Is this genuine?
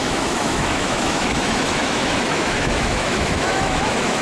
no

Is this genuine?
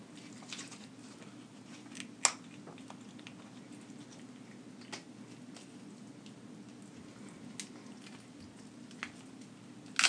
yes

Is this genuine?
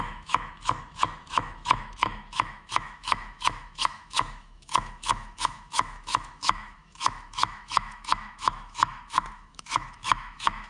no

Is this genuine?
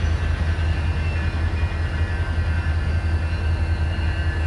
yes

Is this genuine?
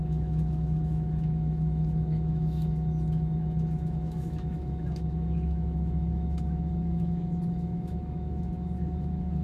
no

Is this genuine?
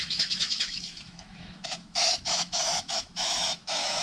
no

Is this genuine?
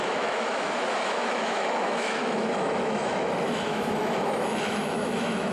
no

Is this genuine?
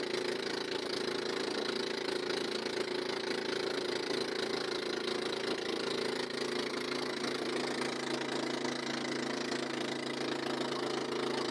yes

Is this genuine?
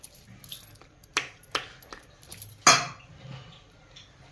yes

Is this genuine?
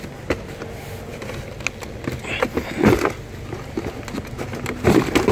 yes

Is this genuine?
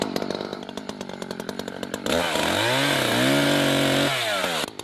yes